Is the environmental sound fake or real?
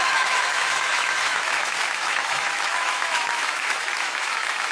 fake